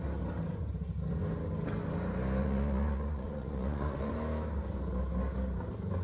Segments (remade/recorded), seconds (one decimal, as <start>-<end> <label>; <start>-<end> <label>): 0.0-2.4 recorded; 2.4-4.1 remade; 4.1-6.0 recorded